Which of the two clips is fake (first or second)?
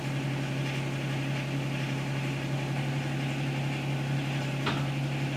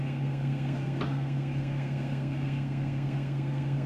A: second